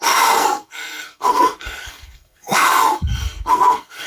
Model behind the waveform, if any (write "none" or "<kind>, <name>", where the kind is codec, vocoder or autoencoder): codec, SNAC